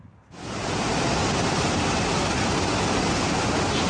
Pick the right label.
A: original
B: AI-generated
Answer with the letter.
A